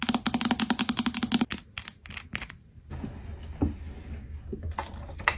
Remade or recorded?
recorded